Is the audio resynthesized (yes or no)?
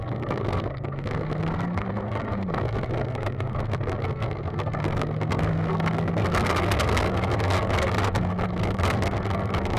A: yes